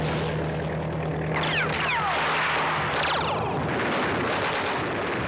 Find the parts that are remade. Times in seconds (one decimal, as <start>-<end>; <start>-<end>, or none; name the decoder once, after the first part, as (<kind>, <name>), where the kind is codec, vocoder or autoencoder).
none